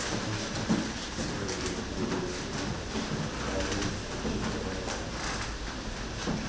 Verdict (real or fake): real